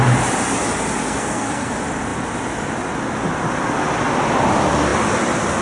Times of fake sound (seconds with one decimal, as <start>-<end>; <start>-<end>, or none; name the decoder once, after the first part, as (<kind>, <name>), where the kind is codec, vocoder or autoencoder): 1.0-1.7 (codec, SNAC)